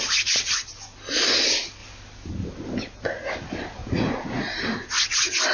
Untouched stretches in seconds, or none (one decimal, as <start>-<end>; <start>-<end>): 0.0-3.8; 4.6-5.5